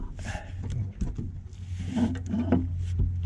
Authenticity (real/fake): real